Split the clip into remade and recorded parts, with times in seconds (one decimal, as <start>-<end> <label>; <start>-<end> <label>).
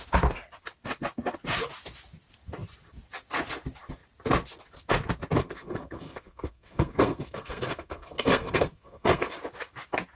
0.0-5.4 recorded; 5.4-9.4 remade; 9.4-10.1 recorded